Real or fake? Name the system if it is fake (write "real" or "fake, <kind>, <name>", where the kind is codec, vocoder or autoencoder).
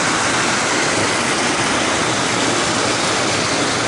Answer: real